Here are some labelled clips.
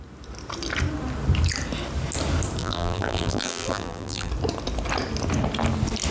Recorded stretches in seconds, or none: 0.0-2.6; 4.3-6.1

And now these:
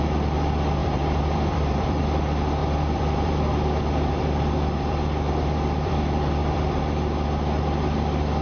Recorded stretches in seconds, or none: 0.0-0.8; 2.0-2.6; 6.8-8.4

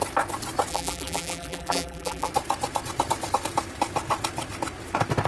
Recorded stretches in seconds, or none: 0.0-0.7; 2.3-5.3

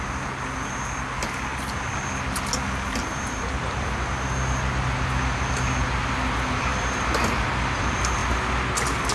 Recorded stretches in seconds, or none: 0.0-3.0; 3.5-9.1

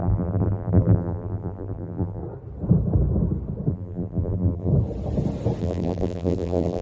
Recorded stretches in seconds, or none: 2.2-3.7; 4.7-5.6